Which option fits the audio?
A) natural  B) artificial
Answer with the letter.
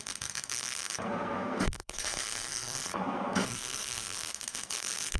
B